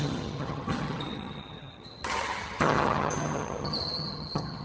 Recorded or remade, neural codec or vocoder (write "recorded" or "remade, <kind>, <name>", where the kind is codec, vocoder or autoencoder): remade, vocoder, HiFi-GAN